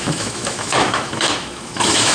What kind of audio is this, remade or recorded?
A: remade